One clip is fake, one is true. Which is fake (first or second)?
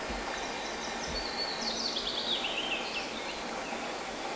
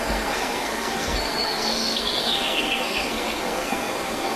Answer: second